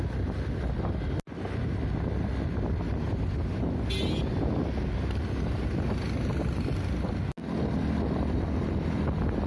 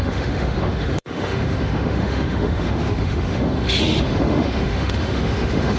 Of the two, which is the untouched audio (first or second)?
first